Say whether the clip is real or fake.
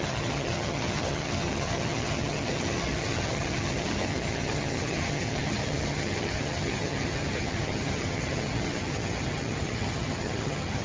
fake